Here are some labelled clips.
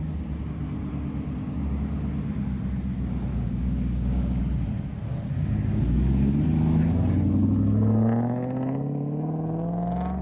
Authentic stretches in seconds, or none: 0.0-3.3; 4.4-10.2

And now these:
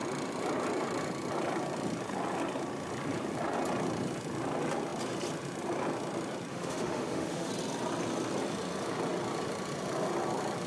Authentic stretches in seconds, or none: 0.0-6.5; 7.5-10.7

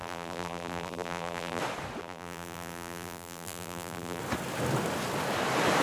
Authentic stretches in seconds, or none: 1.6-2.0; 4.2-5.8

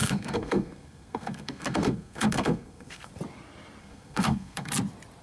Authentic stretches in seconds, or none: 3.1-3.8; 4.7-5.2

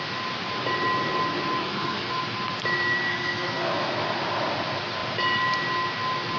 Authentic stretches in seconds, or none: 0.0-1.6; 2.2-3.1; 3.9-6.4

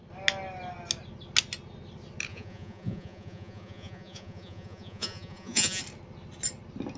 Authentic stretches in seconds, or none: 0.0-2.3; 5.8-7.0

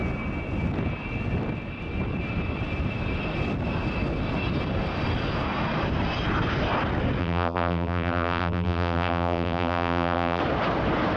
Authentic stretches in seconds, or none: 0.0-7.2; 10.4-11.2